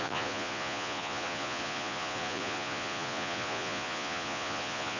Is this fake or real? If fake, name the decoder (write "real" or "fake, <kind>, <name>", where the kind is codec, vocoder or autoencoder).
fake, vocoder, Vocos